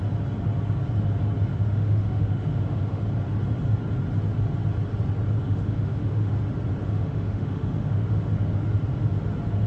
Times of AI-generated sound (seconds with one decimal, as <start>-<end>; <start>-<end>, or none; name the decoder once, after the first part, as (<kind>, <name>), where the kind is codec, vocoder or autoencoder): 1.5-3.0 (autoencoder, DAC-VAE); 5.4-6.3; 6.8-8.3